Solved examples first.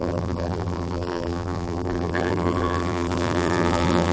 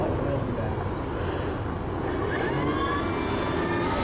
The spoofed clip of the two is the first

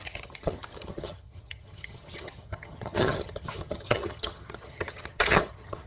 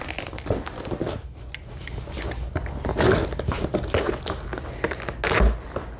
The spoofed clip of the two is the first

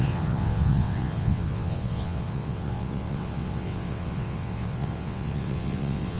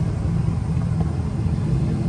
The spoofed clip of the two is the first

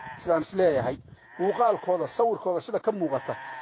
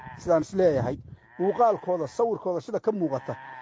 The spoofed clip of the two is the first